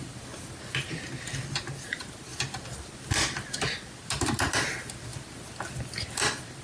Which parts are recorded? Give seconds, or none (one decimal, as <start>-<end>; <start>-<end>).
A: 0.0-6.6